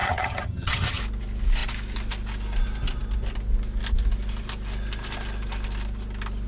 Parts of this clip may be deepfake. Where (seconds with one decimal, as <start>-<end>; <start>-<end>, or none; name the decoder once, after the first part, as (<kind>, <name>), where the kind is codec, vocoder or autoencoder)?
0.0-1.0 (vocoder, HiFi-GAN)